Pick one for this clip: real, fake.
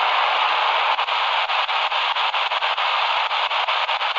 real